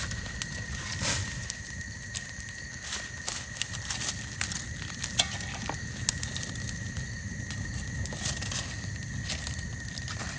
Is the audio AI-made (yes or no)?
no